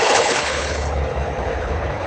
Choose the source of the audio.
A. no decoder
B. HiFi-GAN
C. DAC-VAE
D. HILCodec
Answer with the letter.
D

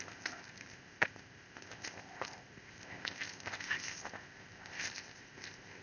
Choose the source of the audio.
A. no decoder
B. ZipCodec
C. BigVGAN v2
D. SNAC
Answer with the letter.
B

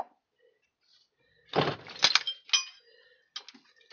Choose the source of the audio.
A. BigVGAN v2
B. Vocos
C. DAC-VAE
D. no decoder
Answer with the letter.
D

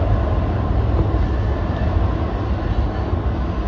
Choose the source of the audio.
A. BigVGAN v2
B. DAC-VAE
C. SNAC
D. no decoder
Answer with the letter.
D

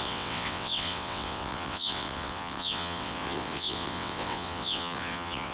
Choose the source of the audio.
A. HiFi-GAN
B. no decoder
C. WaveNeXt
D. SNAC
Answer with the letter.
C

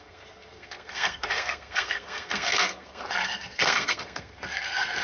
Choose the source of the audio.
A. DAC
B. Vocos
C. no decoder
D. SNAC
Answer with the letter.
D